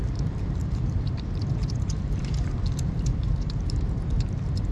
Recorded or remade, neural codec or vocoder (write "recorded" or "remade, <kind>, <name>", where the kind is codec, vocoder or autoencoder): remade, vocoder, BigVGAN v2